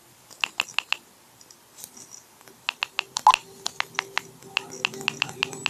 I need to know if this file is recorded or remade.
recorded